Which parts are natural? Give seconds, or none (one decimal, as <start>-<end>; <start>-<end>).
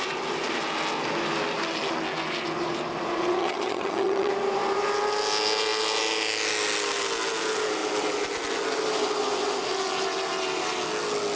0.0-3.4; 4.3-11.4